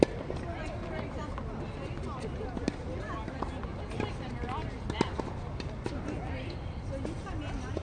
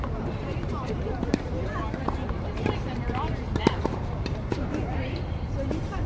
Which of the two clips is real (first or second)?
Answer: first